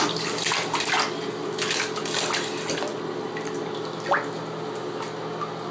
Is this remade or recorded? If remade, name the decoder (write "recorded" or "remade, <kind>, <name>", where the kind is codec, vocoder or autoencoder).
recorded